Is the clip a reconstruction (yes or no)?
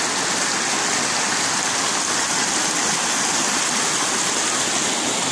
no